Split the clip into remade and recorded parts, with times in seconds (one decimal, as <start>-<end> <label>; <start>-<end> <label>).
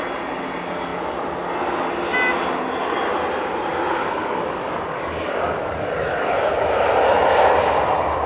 0.0-4.0 recorded; 4.0-6.5 remade; 6.5-8.3 recorded